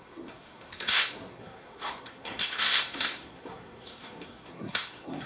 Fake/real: fake